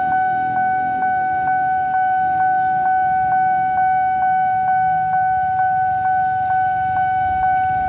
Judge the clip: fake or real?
real